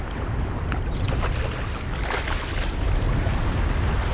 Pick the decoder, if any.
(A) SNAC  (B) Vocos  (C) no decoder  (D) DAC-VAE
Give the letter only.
C